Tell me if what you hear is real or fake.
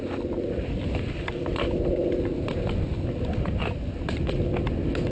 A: real